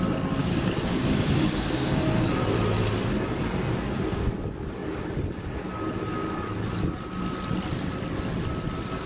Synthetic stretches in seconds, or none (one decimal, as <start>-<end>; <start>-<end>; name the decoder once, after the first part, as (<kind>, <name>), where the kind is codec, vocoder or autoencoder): 0.4-2.0 (codec, DAC)